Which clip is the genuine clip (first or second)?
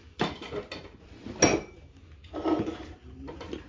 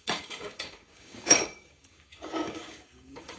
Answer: first